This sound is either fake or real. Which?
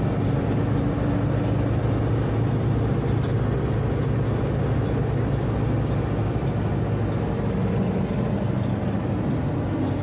real